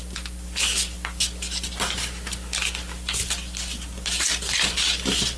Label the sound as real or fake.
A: real